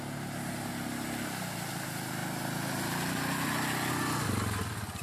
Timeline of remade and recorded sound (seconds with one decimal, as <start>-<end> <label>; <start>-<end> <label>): 0.0-5.0 recorded